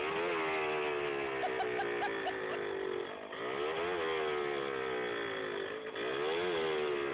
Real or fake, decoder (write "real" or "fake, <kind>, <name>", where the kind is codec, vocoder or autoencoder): real